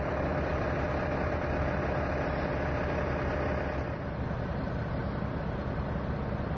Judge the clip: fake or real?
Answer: fake